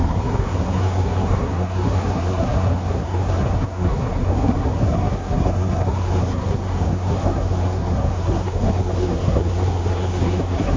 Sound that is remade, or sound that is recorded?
remade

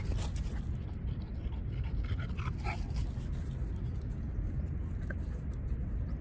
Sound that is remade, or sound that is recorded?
recorded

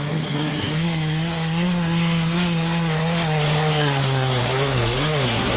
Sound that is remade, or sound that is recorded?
remade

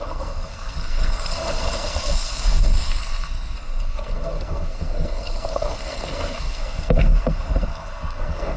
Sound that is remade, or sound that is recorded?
remade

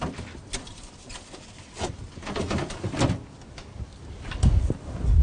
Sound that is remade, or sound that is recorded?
recorded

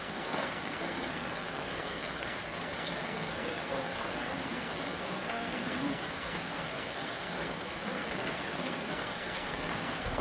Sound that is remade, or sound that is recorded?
remade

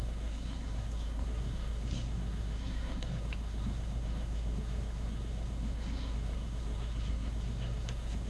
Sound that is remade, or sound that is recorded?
remade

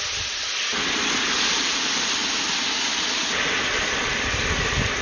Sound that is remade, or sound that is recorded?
recorded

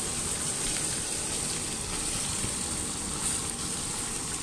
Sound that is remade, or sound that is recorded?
recorded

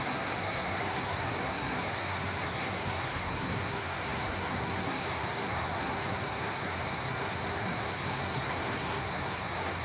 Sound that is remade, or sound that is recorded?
remade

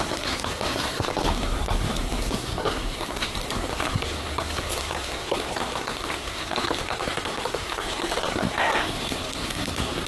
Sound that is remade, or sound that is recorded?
remade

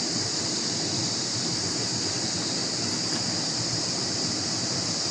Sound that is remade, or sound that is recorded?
recorded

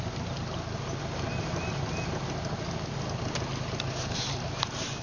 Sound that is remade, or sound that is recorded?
recorded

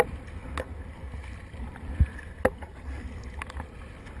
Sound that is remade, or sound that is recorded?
recorded